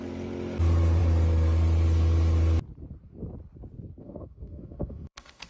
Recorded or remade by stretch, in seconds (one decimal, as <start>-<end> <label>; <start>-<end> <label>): 0.0-4.0 recorded; 4.0-5.5 remade